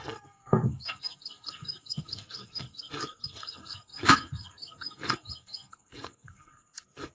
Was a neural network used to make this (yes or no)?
yes